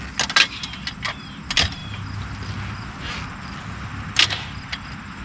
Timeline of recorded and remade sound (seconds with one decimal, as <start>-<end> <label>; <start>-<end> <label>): 0.0-5.2 recorded